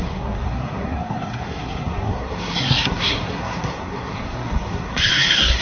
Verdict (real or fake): fake